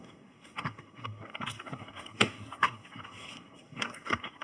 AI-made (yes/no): yes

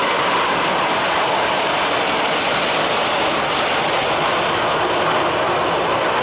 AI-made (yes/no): no